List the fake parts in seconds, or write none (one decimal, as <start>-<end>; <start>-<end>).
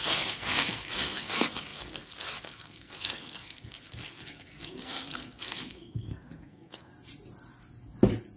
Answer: 0.0-6.9